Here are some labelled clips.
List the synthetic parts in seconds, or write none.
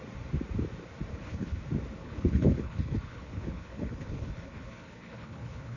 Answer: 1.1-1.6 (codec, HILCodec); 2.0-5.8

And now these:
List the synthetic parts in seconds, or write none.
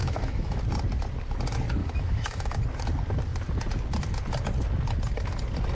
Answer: 0.0-0.6 (autoencoder, DAC-VAE); 1.8-2.6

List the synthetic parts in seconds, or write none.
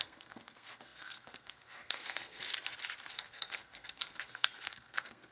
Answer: 0.0-2.4 (codec, SNAC); 3.1-5.3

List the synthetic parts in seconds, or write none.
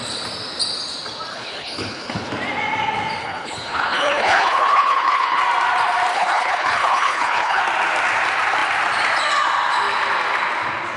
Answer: 1.3-2.3 (codec, HILCodec); 3.2-5.4; 6.1-7.6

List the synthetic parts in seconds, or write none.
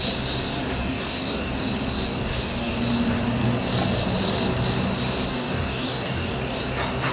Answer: 0.8-1.5 (codec, DAC); 2.1-2.7; 5.3-6.3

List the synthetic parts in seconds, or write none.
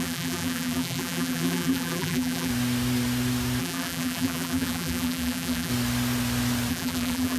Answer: 0.0-2.5 (vocoder, BigVGAN v2); 3.6-5.7; 6.7-7.4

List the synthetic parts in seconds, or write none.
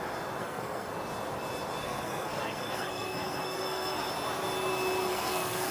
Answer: 0.4-0.9 (codec, SNAC); 1.8-4.1; 5.1-5.7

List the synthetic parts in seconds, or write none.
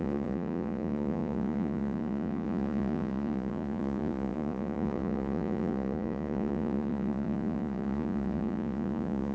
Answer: 0.0-9.3 (vocoder, Vocos)